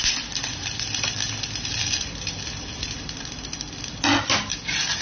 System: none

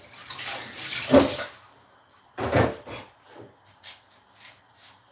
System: none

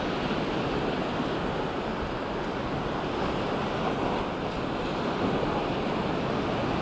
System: none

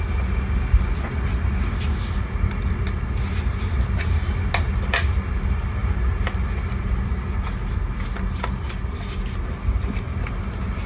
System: none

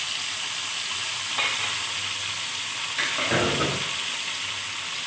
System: none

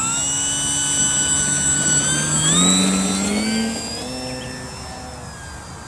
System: none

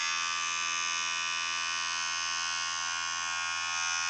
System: none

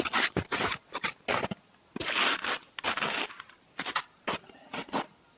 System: none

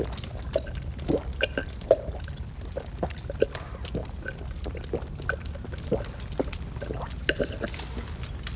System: none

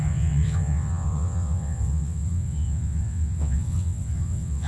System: vocoder, WaveNeXt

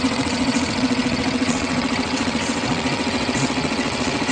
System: vocoder, WaveNeXt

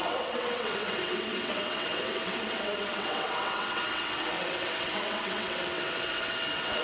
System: vocoder, WaveNeXt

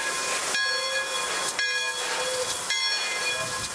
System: none